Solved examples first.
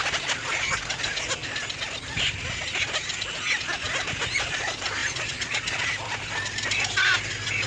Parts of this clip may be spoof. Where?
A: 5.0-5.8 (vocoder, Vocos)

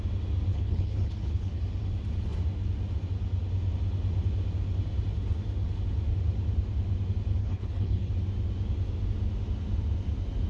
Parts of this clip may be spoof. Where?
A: 0.5-1.6 (codec, HILCodec); 7.4-8.1

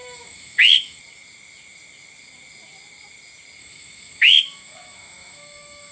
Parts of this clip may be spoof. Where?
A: 0.0-1.0 (autoencoder, DAC-VAE); 3.6-5.9

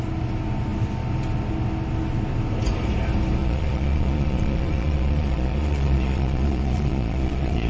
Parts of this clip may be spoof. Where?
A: 3.4-7.7 (vocoder, Vocos)